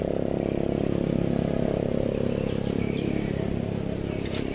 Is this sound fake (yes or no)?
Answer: no